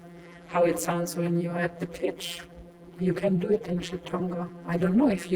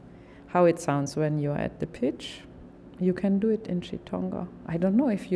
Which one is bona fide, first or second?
second